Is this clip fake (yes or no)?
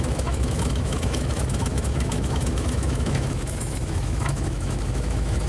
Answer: yes